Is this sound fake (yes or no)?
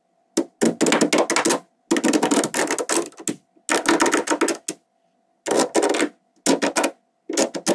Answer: no